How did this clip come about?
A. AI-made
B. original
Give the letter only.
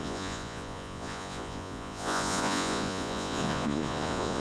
A